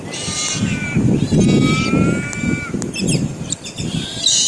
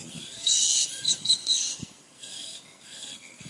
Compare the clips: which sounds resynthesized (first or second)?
second